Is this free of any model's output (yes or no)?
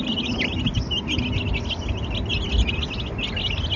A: yes